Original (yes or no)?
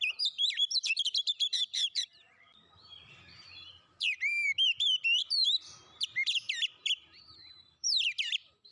no